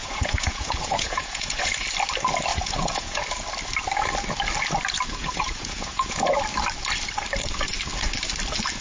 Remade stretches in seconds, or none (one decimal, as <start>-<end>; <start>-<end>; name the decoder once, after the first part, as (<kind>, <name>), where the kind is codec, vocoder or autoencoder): 0.0-1.7 (vocoder, Vocos); 2.5-3.2; 5.2-6.4